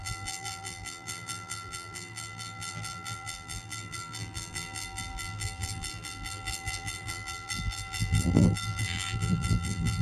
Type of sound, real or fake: fake